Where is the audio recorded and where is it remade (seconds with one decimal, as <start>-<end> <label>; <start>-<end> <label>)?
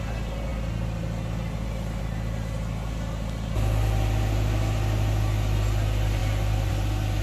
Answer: 0.0-7.2 recorded